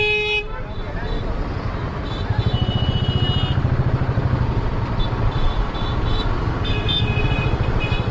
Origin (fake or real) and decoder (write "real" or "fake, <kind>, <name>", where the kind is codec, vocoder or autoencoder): real